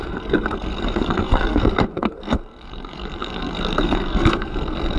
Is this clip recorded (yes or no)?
no